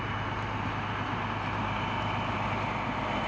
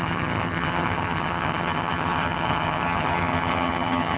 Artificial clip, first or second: second